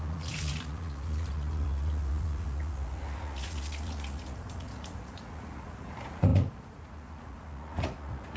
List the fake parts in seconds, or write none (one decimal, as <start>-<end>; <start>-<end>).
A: 0.0-8.4